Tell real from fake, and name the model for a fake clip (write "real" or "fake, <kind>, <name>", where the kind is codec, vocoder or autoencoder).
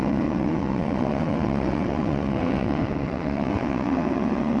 fake, vocoder, WaveNeXt